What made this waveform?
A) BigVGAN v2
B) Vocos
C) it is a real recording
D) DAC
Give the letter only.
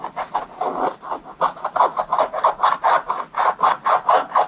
C